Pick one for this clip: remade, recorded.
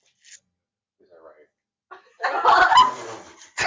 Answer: recorded